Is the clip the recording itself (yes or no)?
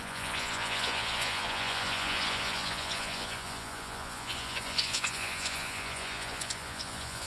no